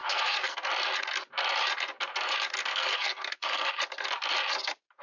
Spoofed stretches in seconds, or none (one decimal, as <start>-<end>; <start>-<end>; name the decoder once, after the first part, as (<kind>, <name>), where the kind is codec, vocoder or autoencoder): 0.0-0.7 (codec, SNAC); 2.6-3.7